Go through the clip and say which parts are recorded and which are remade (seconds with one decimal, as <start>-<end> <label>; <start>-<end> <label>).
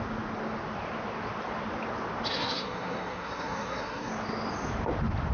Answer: 0.0-2.3 recorded; 2.3-4.1 remade; 4.1-5.3 recorded